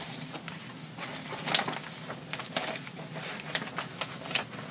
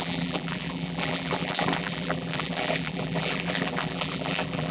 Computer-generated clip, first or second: second